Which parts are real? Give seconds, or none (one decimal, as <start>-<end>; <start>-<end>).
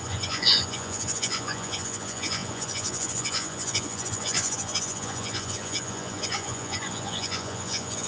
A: none